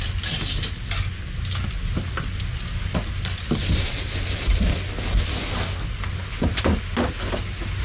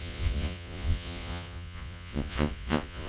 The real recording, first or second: first